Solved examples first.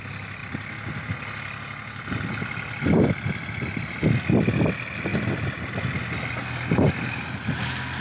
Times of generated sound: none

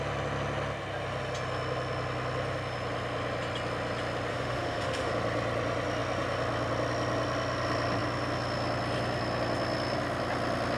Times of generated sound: 4.3-5.1

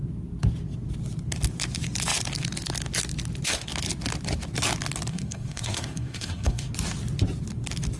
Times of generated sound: 5.1-6.7

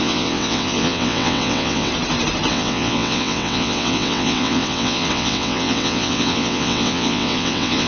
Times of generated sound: 0.0-1.9; 2.5-7.9

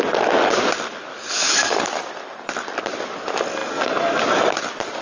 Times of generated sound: 1.1-1.8

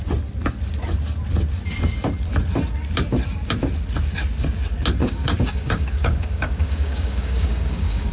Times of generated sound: 5.0-8.1

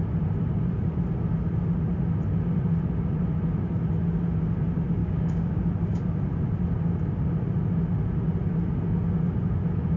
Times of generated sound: 5.0-5.6